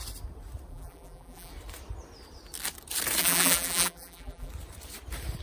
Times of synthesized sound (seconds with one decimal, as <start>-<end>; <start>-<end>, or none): 0.7-1.5; 3.2-4.5